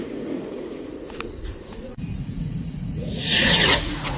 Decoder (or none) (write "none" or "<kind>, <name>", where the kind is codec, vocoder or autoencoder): vocoder, Vocos